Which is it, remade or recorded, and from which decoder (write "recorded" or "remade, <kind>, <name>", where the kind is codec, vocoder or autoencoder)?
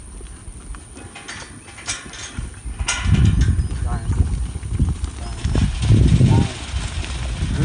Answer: recorded